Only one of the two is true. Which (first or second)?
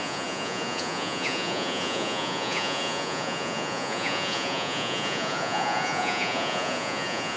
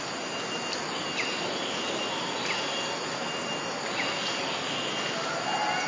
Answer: second